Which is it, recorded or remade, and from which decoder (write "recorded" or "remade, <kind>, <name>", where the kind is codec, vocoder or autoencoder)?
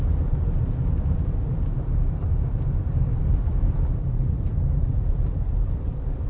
remade, vocoder, BigVGAN v2